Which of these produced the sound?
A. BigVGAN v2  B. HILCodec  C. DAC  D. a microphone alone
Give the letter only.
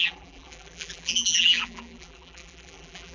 A